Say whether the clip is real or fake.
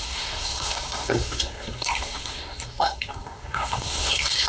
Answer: fake